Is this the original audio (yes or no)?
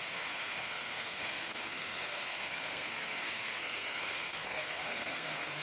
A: no